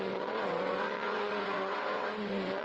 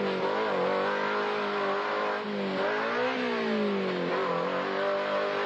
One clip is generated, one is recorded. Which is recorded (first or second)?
second